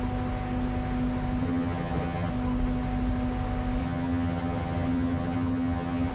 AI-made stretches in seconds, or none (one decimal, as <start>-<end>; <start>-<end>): 1.4-2.3; 3.8-6.1